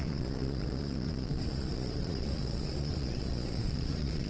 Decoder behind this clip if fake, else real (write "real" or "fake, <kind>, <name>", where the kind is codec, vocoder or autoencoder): fake, vocoder, Vocos